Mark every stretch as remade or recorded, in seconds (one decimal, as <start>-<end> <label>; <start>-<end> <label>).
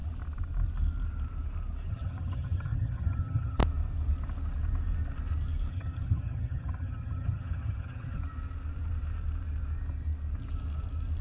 0.0-1.9 recorded; 1.9-3.6 remade; 3.6-5.7 recorded; 5.7-8.2 remade; 8.2-11.2 recorded